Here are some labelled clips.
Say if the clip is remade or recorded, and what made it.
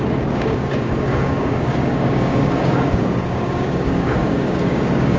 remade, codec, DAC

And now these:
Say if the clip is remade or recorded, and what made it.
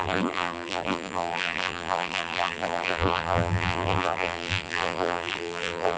remade, vocoder, BigVGAN v2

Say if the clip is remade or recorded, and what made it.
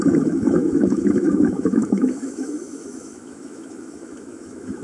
remade, autoencoder, DAC-VAE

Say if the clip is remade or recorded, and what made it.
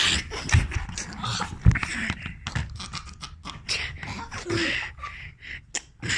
recorded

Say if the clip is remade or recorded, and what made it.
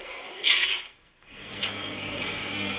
remade, codec, SNAC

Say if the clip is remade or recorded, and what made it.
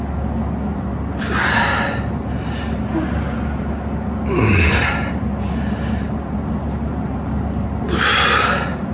recorded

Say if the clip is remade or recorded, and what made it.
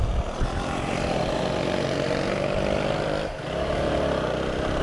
recorded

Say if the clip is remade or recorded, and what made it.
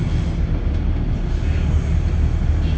recorded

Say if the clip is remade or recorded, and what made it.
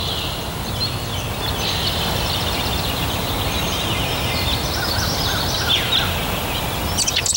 recorded